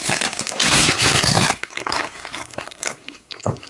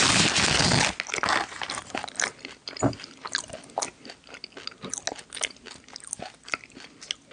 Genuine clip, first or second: second